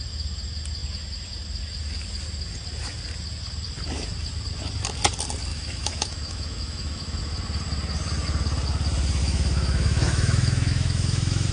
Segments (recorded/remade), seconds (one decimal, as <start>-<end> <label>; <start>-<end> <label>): 0.0-5.5 recorded; 5.5-7.2 remade; 7.2-9.2 recorded; 9.2-11.5 remade